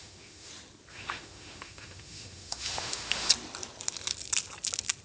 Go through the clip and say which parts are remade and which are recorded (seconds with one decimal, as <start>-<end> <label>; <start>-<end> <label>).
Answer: 0.0-0.5 remade; 0.5-0.9 recorded; 0.9-3.3 remade; 3.3-5.0 recorded